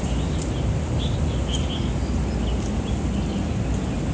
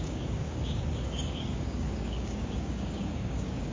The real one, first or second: first